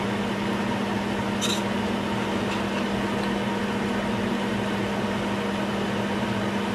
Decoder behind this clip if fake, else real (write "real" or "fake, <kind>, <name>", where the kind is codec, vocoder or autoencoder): real